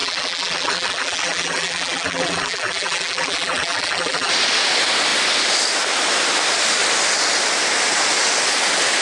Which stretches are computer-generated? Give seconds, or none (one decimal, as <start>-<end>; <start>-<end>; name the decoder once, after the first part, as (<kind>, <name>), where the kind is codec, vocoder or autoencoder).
0.0-4.3 (vocoder, BigVGAN v2)